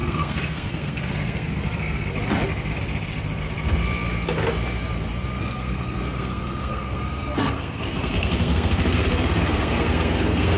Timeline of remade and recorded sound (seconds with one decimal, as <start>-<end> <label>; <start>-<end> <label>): 0.0-2.1 remade; 2.1-5.4 recorded; 5.4-10.6 remade